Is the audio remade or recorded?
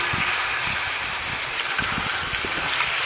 recorded